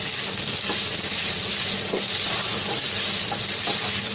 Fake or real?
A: real